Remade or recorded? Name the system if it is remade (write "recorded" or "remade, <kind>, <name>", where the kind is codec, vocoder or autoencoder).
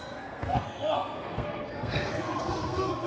remade, codec, SNAC